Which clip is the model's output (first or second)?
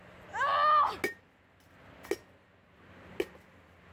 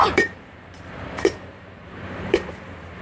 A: second